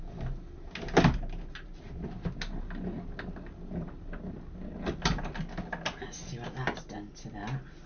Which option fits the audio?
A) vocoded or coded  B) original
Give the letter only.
B